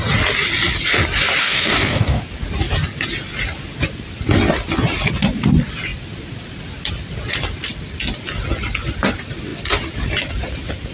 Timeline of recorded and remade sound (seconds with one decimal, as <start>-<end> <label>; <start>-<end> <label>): 0.0-1.4 recorded; 1.4-2.2 remade; 2.2-10.9 recorded